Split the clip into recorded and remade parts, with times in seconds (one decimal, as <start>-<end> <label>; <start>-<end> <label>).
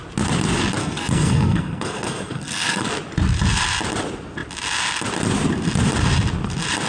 0.0-0.8 recorded; 0.8-2.9 remade; 2.9-6.9 recorded